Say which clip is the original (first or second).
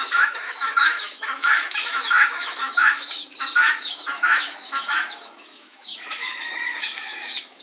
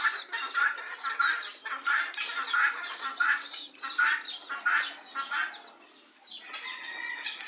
second